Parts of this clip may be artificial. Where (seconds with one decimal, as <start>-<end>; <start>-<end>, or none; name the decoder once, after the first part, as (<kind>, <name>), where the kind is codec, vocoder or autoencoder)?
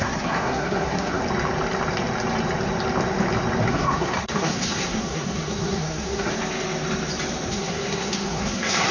0.0-1.2 (codec, SNAC); 3.7-6.3; 7.5-8.9